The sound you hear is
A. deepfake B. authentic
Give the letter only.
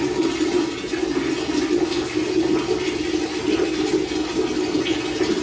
B